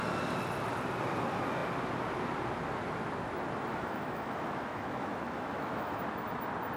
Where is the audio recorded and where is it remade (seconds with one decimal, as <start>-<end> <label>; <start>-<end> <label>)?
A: 0.0-3.7 recorded; 3.7-6.0 remade; 6.0-6.8 recorded